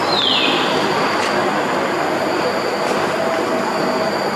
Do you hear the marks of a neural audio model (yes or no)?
no